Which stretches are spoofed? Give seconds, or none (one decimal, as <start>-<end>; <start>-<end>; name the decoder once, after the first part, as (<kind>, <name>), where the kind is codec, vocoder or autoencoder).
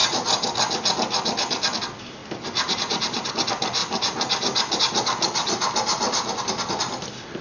2.2-3.3 (vocoder, BigVGAN v2); 3.8-4.8